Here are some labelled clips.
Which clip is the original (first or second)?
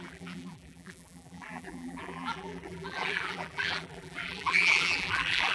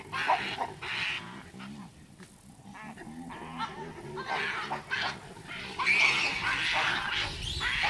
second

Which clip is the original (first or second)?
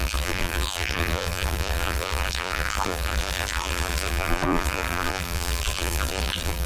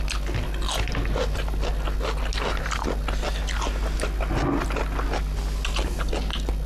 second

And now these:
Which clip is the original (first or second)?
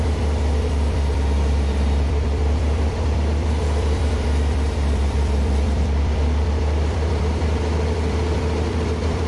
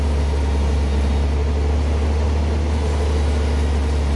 second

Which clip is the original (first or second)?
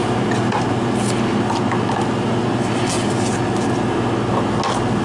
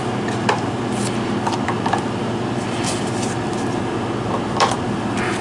first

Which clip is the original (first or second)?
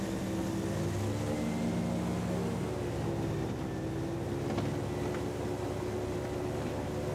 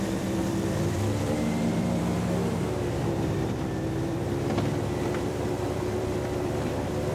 first